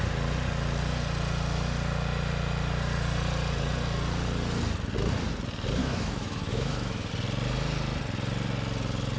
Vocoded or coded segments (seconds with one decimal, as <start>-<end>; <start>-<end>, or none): 5.8-7.1